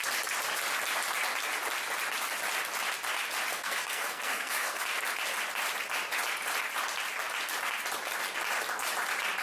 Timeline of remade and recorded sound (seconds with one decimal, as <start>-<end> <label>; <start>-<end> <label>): 0.0-3.5 recorded; 3.5-4.8 remade; 4.8-9.4 recorded